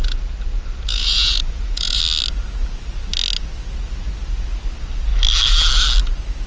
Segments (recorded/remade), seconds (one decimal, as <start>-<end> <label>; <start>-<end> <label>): 0.0-0.9 recorded; 0.9-2.0 remade; 2.0-6.5 recorded